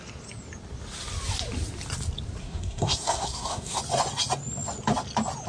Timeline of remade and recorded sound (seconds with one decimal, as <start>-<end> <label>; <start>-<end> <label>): 0.0-2.4 recorded; 2.4-3.8 remade; 3.8-5.5 recorded